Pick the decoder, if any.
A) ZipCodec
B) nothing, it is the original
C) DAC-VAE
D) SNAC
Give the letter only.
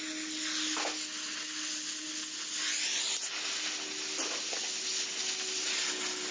B